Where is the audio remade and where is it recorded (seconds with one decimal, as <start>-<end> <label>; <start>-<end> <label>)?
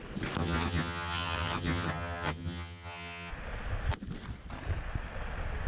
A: 0.0-0.4 recorded; 0.4-3.3 remade; 3.3-5.7 recorded